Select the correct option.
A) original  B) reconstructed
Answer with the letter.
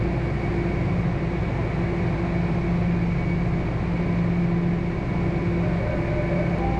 A